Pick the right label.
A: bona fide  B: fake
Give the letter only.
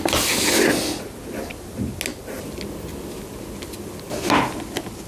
A